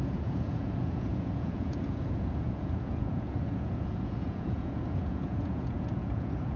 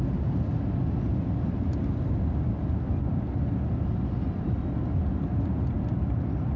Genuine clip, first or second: second